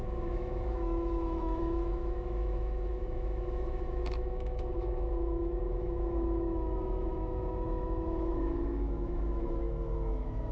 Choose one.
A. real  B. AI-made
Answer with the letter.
B